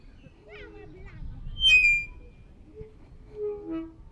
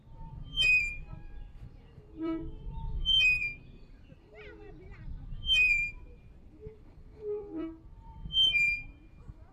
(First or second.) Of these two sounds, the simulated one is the second